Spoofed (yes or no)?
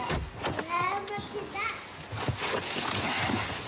no